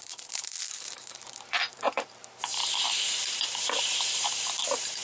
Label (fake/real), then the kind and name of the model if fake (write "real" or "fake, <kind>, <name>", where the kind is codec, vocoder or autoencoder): fake, vocoder, BigVGAN v2